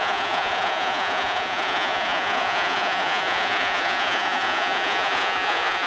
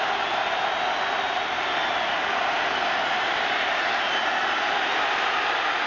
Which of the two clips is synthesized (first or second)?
first